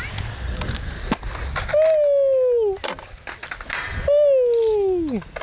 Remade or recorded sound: recorded